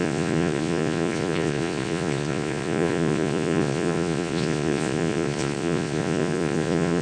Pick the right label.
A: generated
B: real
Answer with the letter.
A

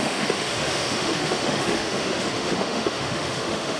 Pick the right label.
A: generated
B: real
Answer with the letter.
A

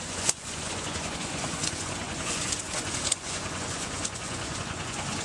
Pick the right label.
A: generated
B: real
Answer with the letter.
A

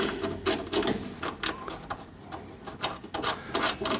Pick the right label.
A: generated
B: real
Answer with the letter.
B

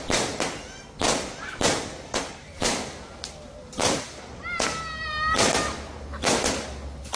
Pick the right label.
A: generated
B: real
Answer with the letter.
B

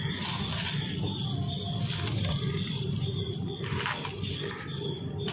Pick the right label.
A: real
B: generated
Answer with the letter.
A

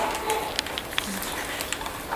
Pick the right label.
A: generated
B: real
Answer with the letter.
B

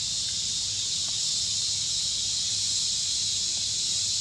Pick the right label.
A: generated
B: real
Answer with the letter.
B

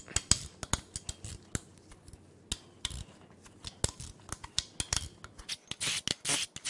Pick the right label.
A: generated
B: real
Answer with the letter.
B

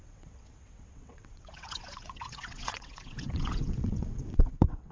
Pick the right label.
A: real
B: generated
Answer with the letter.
B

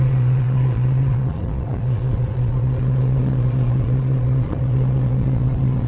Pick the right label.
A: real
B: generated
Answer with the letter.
B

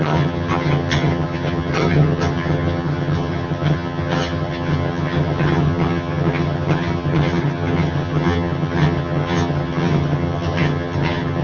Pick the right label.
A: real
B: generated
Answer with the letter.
B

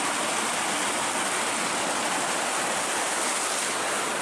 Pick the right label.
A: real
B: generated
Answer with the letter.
A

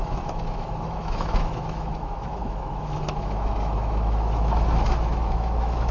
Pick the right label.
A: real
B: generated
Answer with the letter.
B